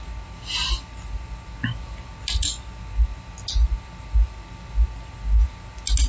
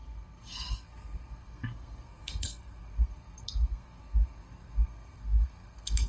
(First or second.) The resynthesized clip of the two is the second